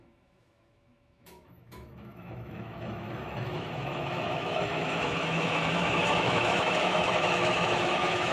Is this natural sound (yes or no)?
no